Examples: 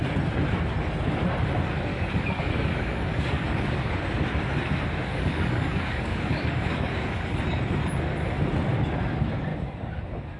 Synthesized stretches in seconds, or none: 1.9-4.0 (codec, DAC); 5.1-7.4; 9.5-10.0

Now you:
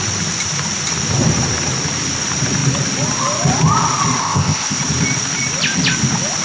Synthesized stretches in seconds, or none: 4.2-4.8 (codec, ZipCodec)

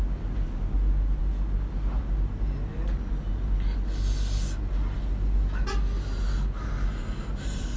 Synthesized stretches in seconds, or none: none

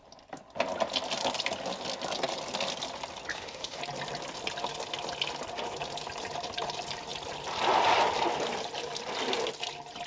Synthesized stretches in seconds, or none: 3.3-3.8 (autoencoder, DAC-VAE)